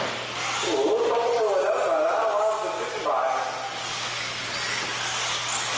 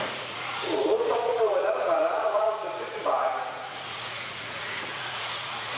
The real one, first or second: first